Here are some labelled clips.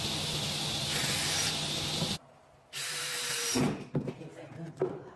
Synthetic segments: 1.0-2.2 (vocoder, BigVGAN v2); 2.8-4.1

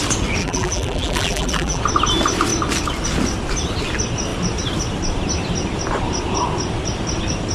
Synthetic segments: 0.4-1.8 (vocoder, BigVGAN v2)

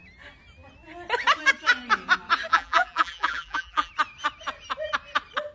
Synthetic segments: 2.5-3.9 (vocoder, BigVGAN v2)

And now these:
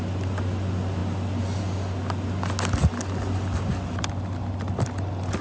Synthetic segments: none

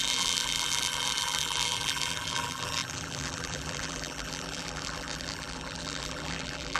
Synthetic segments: 0.0-6.8 (vocoder, BigVGAN v2)

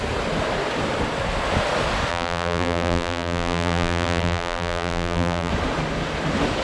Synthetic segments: 2.1-5.5 (vocoder, BigVGAN v2)

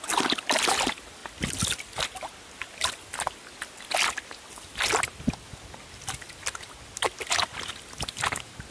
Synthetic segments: none